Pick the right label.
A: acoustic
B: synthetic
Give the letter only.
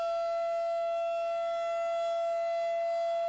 A